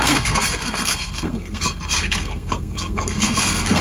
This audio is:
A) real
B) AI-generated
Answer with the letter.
B